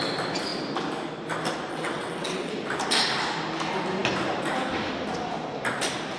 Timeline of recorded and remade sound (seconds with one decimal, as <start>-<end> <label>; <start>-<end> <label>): 0.0-1.7 recorded; 1.7-2.5 remade; 2.5-6.2 recorded